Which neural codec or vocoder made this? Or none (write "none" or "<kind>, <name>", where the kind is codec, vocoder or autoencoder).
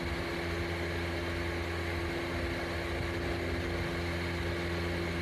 none